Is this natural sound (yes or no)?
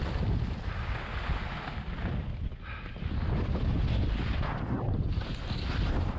yes